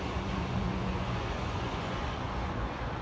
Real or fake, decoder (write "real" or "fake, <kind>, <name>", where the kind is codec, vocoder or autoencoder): fake, vocoder, Vocos